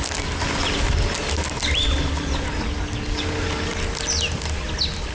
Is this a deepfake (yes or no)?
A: no